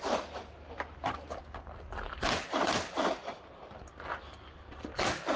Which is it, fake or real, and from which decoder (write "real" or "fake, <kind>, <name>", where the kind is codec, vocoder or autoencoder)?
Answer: real